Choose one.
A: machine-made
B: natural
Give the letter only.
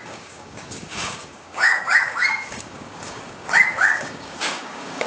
A